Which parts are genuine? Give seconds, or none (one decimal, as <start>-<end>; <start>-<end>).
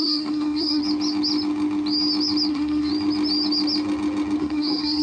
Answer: 0.8-2.5; 2.9-4.4